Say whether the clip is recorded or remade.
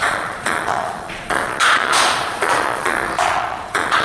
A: remade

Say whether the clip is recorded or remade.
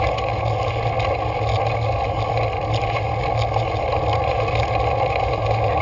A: recorded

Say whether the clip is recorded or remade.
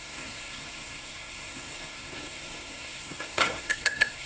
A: remade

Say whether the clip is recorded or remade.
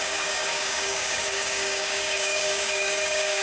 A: remade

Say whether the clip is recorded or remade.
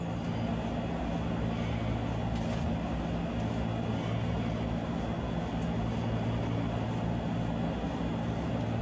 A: recorded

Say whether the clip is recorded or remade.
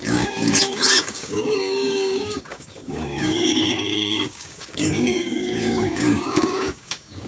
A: remade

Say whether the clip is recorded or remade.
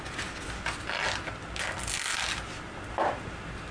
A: recorded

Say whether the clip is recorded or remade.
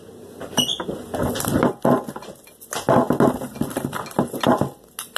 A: recorded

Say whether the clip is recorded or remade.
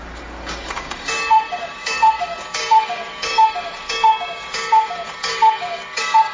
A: remade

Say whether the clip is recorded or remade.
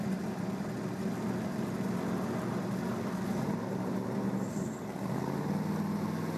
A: recorded